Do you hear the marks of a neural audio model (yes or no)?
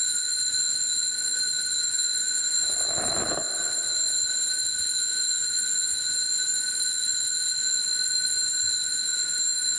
no